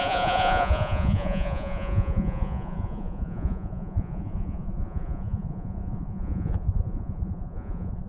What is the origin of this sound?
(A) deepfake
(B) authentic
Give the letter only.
A